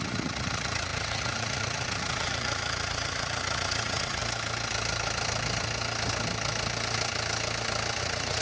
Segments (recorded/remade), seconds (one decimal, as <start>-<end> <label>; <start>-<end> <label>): 0.0-4.2 remade; 4.2-8.0 recorded; 8.0-8.4 remade